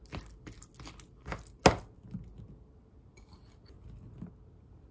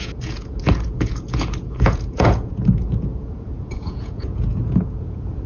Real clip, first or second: first